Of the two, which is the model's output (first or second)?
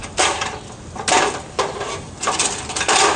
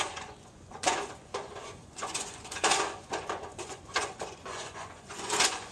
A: second